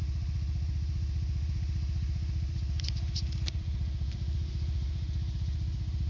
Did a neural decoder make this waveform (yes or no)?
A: yes